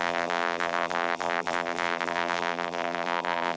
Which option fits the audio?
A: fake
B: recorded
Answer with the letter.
A